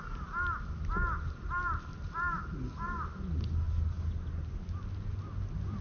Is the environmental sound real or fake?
real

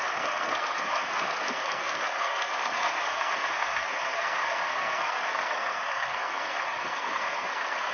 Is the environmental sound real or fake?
fake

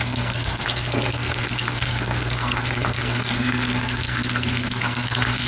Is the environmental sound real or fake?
fake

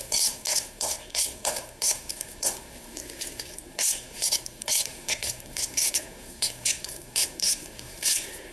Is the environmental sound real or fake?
fake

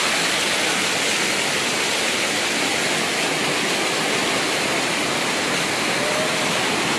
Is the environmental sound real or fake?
real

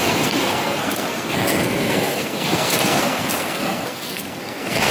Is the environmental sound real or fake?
fake